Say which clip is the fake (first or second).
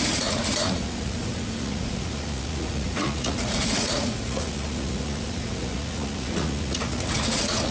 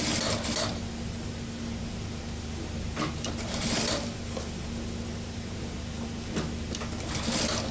first